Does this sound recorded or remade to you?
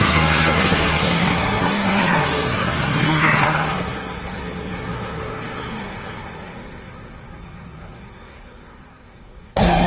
remade